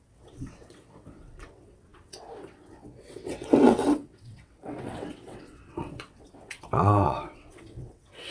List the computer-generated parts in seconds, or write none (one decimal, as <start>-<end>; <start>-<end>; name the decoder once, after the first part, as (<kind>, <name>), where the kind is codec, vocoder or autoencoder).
0.0-8.3 (vocoder, WaveNeXt)